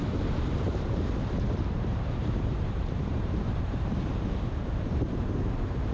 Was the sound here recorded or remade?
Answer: remade